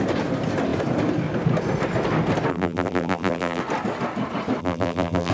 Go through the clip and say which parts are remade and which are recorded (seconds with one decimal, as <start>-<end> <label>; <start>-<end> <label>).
0.0-2.5 recorded; 2.5-3.6 remade; 3.6-4.6 recorded; 4.6-5.3 remade